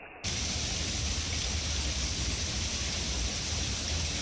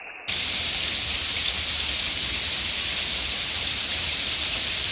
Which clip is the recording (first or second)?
first